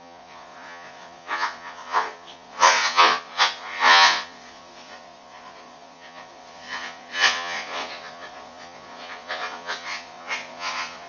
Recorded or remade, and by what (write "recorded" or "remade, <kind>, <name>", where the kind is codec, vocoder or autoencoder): remade, vocoder, Vocos